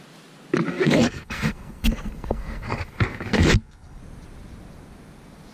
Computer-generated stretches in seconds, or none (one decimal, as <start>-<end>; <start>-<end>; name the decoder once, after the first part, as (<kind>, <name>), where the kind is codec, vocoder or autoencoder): 0.7-4.0 (codec, SNAC)